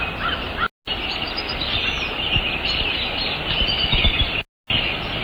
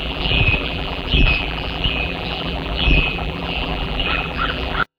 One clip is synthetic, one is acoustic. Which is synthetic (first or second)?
second